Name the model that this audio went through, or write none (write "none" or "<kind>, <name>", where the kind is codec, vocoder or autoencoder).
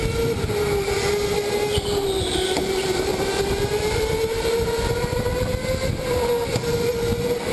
none